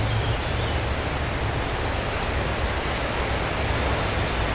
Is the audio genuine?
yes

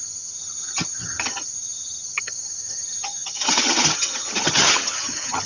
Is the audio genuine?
no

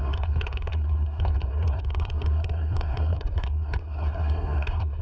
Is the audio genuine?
no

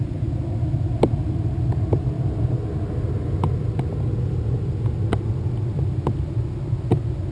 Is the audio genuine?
yes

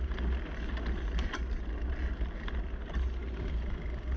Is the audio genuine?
yes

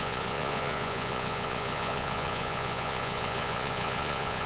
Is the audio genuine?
no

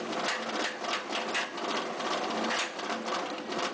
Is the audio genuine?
yes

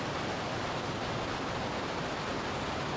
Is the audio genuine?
yes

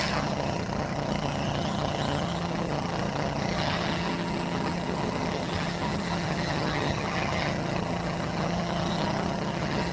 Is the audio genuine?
no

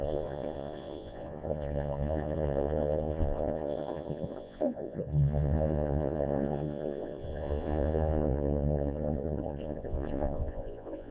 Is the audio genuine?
no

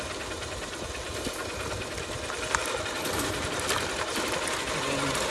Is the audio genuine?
yes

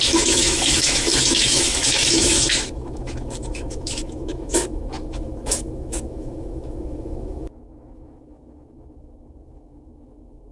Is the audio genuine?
no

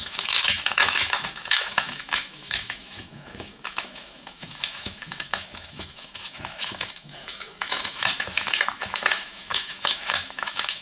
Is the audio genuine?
no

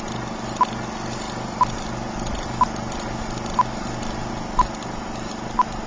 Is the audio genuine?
yes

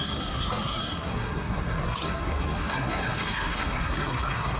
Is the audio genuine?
no